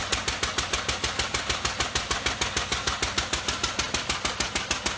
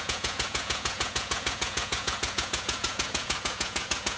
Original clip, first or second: first